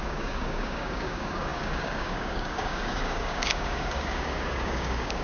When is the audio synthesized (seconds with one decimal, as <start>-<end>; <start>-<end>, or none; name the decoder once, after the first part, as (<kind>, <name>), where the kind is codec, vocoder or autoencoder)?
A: 0.0-5.2 (codec, DAC)